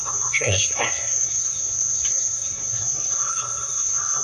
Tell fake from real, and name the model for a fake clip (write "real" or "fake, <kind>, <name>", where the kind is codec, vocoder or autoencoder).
fake, codec, SNAC